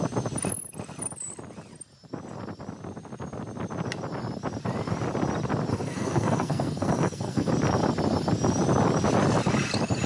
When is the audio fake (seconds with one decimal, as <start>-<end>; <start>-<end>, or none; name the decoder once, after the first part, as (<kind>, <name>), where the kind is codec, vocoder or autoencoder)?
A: 5.7-7.5 (codec, SNAC)